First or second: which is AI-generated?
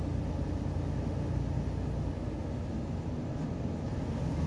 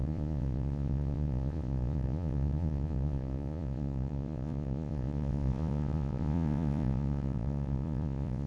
second